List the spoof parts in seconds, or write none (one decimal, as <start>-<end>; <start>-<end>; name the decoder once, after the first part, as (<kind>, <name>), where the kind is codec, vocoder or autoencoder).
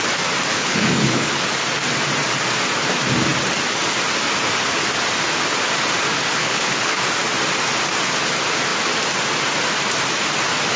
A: 0.5-1.3 (codec, HILCodec); 6.4-7.0